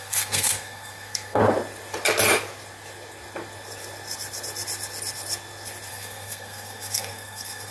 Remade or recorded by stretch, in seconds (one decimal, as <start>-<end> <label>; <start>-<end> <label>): 0.0-1.4 remade; 1.4-5.9 recorded; 5.9-7.7 remade